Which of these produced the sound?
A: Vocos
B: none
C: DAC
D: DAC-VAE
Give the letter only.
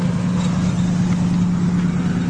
B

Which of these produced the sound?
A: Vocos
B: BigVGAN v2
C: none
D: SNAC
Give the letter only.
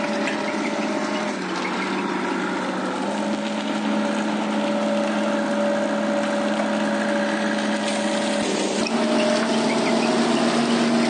C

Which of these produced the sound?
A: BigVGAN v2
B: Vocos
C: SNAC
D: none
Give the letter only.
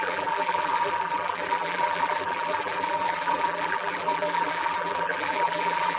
A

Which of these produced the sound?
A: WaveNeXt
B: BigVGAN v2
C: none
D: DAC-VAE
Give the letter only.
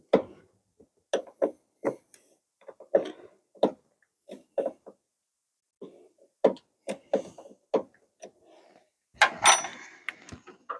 C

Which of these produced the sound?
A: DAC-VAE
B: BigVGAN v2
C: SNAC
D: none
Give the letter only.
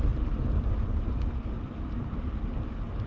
D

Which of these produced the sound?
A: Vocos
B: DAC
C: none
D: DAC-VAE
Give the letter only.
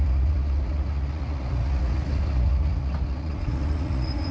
A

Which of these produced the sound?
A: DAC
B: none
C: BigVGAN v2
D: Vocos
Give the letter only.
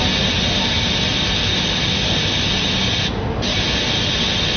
B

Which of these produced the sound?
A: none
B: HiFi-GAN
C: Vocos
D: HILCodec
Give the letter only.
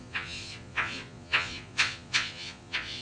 C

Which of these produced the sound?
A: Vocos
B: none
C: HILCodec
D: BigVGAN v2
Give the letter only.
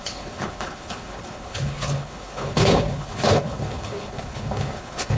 C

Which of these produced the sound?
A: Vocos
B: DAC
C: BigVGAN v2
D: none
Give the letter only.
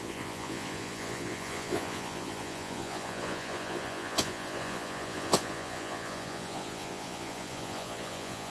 A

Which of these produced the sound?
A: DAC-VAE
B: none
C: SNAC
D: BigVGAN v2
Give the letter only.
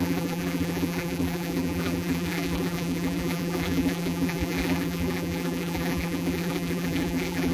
D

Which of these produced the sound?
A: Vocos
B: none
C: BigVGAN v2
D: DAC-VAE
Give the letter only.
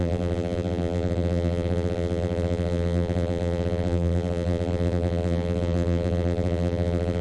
C